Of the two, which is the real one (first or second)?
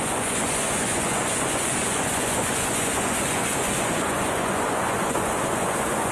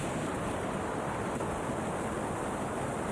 second